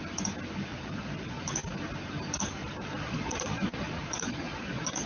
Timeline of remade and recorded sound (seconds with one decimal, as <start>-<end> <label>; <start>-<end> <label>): 0.0-0.7 recorded; 0.7-1.4 remade; 1.4-2.6 recorded; 2.6-5.1 remade